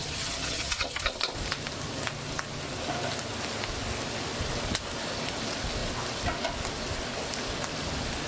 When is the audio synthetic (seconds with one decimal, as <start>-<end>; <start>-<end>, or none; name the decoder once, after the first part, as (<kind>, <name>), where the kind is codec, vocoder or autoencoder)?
0.0-1.1 (vocoder, HiFi-GAN)